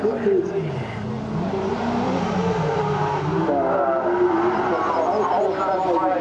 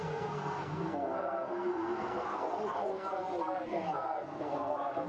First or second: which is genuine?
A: first